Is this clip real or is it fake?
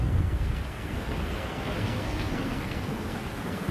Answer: fake